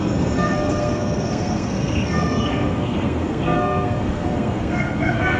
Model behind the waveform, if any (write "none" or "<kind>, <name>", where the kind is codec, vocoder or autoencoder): codec, SNAC